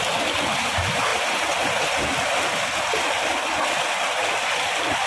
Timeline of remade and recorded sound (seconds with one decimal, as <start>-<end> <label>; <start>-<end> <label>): 0.0-5.1 recorded